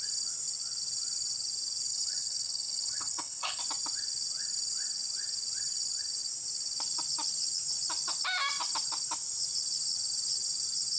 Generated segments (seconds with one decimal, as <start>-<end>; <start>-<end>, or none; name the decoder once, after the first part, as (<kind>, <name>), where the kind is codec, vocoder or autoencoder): 1.9-3.6 (codec, HILCodec)